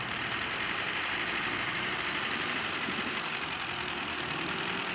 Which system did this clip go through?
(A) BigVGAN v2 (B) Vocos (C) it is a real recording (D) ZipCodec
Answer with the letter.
A